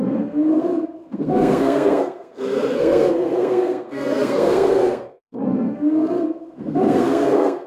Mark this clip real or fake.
fake